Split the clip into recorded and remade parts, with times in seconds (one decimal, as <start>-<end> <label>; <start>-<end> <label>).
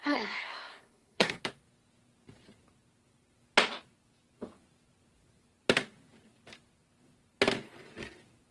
0.0-1.4 remade; 1.4-8.5 recorded